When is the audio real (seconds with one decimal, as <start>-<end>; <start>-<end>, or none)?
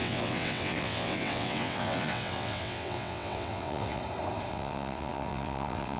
4.0-4.5